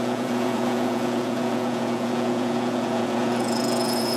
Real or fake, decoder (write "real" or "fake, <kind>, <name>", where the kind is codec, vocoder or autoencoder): fake, vocoder, Vocos